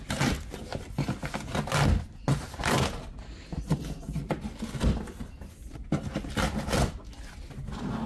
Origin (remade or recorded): recorded